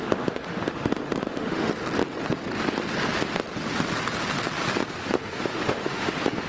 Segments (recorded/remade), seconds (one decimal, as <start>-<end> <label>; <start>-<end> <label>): 0.0-1.7 remade; 1.7-5.0 recorded; 5.0-6.1 remade; 6.1-6.5 recorded